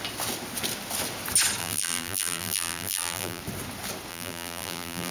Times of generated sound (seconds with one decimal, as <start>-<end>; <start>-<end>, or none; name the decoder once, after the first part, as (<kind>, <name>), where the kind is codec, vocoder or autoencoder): 1.6-3.4 (vocoder, BigVGAN v2); 4.1-5.1